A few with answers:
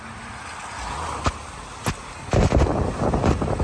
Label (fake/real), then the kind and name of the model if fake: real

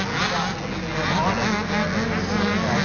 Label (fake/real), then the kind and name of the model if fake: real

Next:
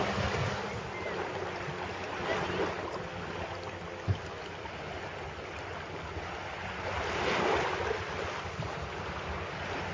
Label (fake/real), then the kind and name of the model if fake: real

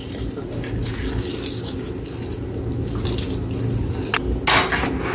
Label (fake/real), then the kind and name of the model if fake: real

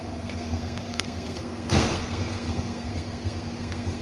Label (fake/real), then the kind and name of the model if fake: fake, codec, SNAC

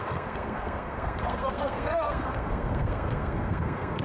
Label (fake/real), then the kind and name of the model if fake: fake, codec, SNAC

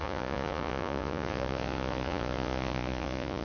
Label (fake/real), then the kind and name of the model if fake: fake, vocoder, Vocos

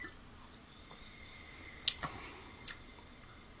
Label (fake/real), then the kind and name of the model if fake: real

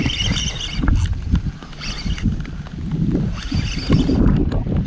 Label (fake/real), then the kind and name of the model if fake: real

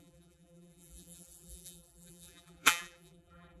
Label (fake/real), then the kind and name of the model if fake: fake, vocoder, BigVGAN v2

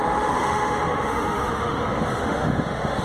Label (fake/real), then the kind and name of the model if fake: fake, autoencoder, DAC-VAE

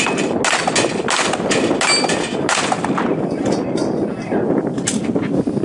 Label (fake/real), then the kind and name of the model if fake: real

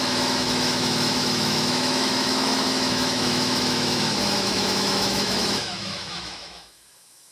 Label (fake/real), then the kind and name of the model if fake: fake, autoencoder, DAC-VAE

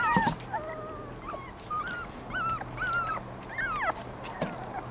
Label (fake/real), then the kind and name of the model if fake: real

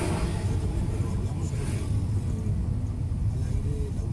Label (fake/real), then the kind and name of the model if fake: real